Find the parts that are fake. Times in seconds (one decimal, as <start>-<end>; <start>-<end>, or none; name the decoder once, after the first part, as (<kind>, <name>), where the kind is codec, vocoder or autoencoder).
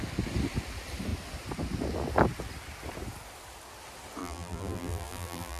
4.2-5.6 (vocoder, BigVGAN v2)